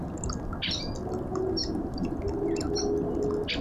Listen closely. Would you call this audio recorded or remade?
recorded